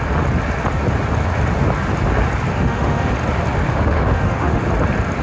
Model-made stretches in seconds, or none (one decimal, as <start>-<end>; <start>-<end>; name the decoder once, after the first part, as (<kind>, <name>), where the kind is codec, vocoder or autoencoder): 2.5-3.1 (autoencoder, DAC-VAE); 3.7-4.6